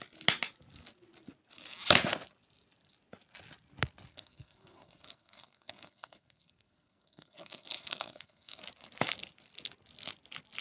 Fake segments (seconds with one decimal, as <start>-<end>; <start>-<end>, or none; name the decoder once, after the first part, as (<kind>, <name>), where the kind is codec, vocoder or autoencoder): 4.1-8.6 (codec, SNAC)